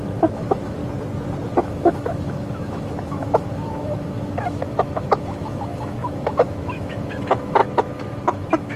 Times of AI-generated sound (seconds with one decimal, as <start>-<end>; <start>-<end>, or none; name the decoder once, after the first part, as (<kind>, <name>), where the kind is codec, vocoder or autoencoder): 0.0-0.8 (autoencoder, DAC-VAE); 1.6-8.8